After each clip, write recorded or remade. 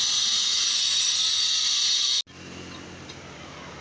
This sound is recorded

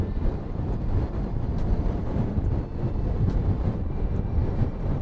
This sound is remade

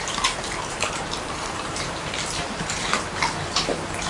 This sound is remade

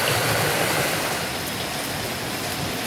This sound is recorded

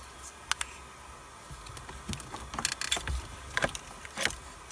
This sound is recorded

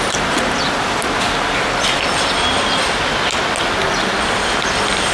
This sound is recorded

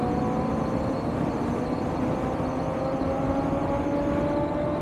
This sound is recorded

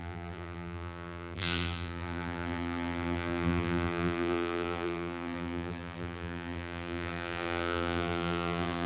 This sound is remade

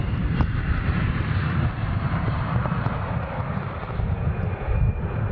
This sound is remade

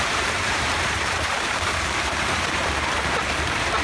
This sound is remade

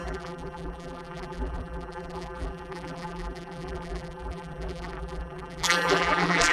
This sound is remade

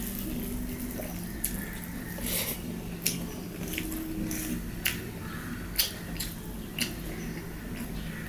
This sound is recorded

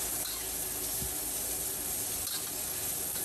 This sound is recorded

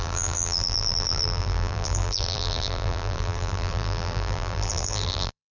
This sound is remade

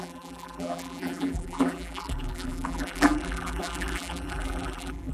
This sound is remade